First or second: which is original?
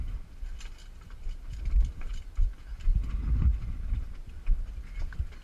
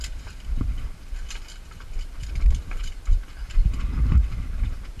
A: first